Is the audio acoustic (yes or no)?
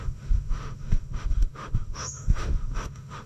no